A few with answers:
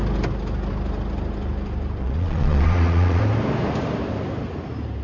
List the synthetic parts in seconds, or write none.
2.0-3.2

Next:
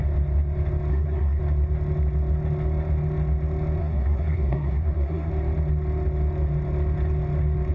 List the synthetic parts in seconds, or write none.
0.9-1.4; 3.8-5.3

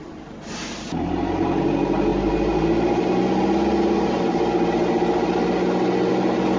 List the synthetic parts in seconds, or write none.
none